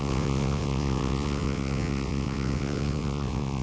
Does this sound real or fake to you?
fake